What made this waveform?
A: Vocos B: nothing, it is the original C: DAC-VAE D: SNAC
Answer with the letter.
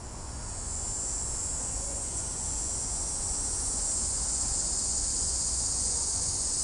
A